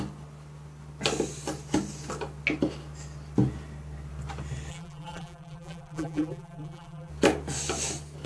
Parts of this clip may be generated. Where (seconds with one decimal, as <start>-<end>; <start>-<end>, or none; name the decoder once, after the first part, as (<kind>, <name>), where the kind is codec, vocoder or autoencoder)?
4.7-7.1 (vocoder, BigVGAN v2)